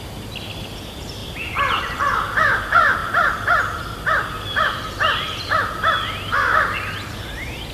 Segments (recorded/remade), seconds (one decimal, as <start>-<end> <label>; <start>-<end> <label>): 0.0-1.2 recorded; 1.2-1.8 remade; 1.8-3.0 recorded; 3.0-7.7 remade